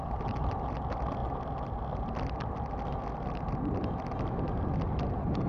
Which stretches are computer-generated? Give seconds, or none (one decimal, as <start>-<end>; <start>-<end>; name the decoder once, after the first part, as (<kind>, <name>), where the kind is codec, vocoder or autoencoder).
none